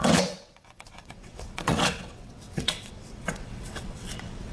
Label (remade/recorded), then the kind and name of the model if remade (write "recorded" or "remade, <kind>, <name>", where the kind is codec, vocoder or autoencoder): remade, vocoder, WaveNeXt